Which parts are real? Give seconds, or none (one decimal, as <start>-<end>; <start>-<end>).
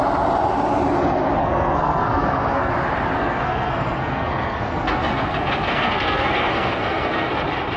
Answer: 0.0-1.4; 2.7-3.2; 7.3-7.8